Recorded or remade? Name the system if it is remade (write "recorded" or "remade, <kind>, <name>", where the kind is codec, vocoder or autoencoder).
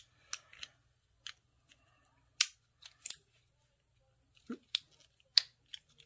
recorded